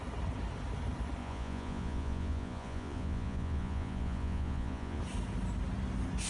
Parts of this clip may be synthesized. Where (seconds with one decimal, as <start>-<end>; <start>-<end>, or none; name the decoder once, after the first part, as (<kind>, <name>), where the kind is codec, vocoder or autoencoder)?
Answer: 1.2-5.0 (vocoder, Vocos)